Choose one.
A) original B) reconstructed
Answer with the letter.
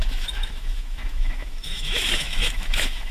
B